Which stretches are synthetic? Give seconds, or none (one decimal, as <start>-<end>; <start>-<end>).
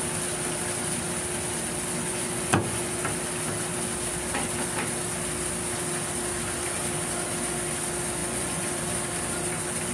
2.1-3.0; 8.2-8.8